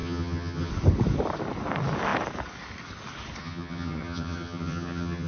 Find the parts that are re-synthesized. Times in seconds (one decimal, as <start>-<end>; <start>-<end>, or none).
0.0-0.7; 3.4-5.3